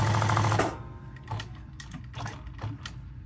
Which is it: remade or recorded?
recorded